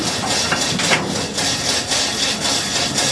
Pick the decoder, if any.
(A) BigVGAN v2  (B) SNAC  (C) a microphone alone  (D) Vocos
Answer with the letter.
C